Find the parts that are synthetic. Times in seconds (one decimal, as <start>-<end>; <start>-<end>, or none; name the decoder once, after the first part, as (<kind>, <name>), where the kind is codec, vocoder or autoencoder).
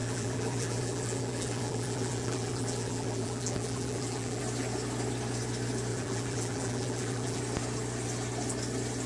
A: 0.0-4.4 (vocoder, BigVGAN v2); 5.9-7.4